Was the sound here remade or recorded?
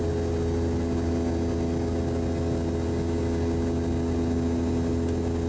recorded